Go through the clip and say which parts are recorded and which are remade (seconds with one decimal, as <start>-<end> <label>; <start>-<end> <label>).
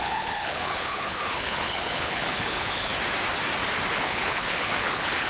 0.0-2.9 remade; 2.9-3.9 recorded; 3.9-5.3 remade